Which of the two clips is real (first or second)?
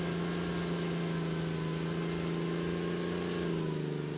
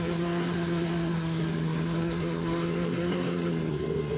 first